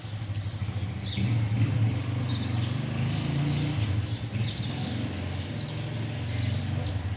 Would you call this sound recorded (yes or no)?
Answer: yes